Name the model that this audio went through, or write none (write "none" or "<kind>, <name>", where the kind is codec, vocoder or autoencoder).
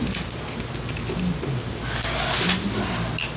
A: none